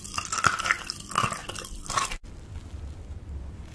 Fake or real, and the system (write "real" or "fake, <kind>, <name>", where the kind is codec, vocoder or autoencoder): real